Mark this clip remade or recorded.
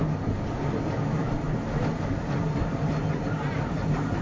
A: recorded